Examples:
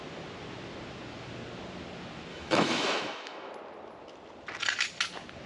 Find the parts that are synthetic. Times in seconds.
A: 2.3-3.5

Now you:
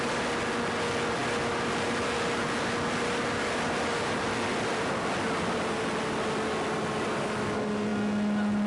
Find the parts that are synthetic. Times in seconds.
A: none

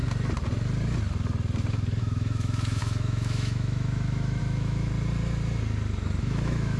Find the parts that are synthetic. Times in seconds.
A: 2.0-4.9; 6.2-6.8

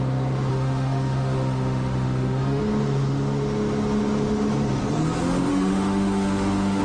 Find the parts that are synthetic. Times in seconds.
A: 0.5-2.6; 5.5-6.8

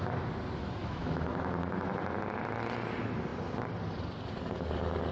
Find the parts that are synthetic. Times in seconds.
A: 0.8-1.3

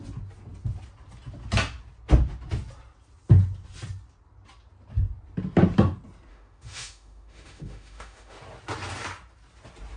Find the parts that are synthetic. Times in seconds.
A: 6.3-8.4